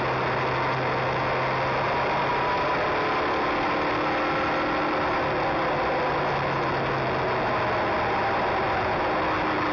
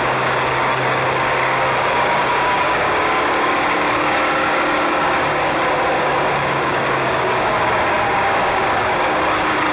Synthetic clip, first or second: second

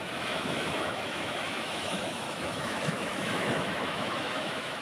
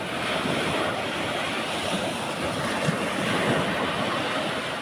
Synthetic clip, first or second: first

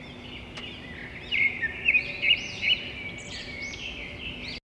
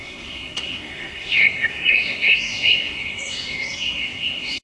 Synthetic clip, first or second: second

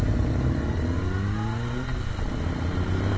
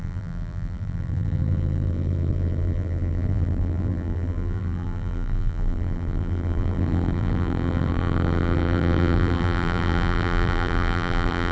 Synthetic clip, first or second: second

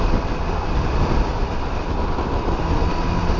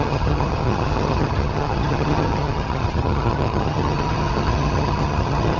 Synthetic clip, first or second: second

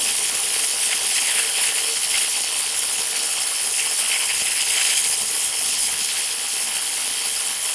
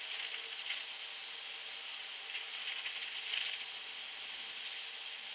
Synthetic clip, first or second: first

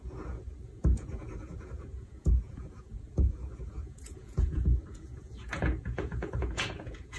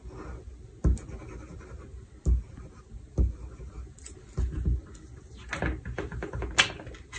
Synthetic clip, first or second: first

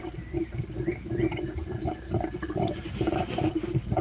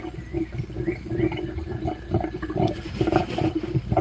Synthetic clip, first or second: first